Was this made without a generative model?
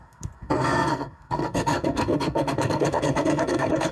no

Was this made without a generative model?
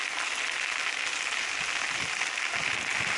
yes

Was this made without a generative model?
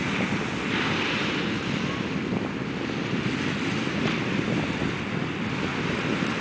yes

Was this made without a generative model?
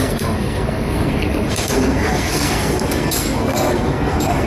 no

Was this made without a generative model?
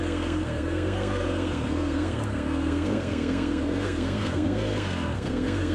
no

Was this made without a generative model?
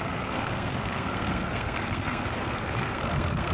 no